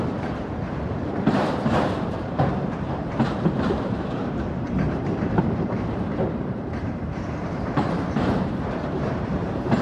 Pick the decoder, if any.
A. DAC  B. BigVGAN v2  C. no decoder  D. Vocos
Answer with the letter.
B